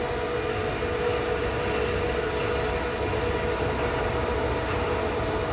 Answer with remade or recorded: recorded